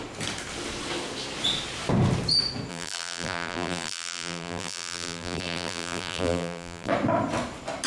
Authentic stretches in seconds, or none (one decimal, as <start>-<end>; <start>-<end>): 0.0-2.7; 6.9-7.9